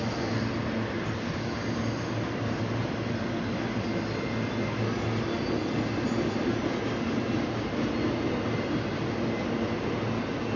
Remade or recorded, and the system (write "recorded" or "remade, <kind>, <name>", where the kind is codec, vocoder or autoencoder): recorded